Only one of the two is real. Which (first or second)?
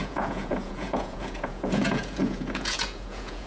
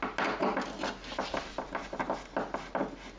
second